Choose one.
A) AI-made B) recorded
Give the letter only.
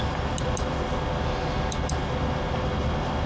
B